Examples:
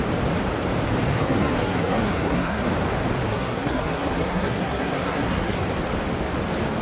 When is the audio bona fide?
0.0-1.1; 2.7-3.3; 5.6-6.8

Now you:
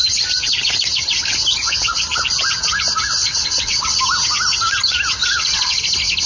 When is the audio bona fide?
0.0-3.2; 4.0-5.2; 5.8-6.3

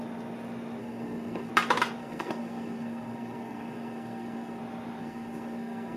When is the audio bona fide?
0.0-0.8; 1.5-2.0; 4.6-5.0

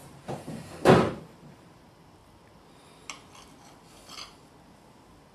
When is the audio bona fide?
1.8-5.3

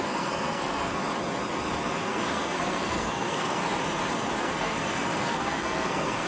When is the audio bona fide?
1.0-2.0; 3.6-4.4